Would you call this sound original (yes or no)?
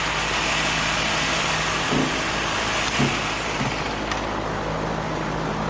yes